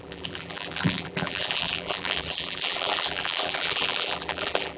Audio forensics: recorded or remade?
remade